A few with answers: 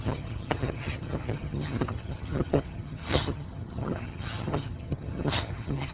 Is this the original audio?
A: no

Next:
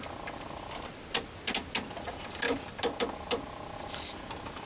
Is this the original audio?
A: yes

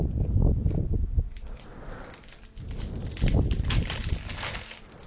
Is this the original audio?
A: yes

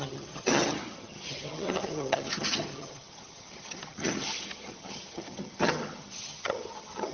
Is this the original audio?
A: no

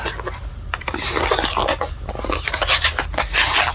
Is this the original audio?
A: yes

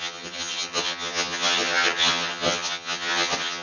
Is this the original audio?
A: no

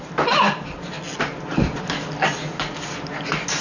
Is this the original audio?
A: yes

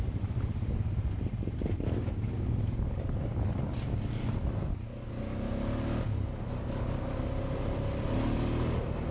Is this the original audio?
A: yes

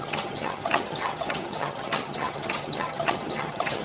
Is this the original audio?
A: no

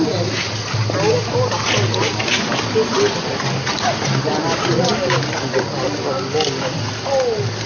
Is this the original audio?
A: yes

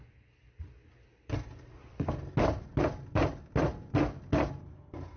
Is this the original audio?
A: yes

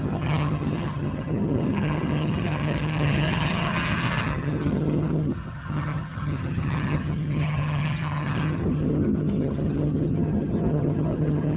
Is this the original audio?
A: no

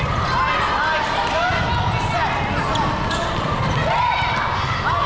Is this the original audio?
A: yes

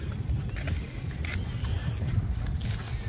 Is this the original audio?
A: yes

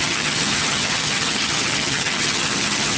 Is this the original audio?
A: no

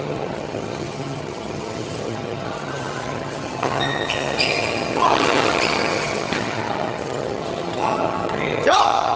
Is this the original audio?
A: no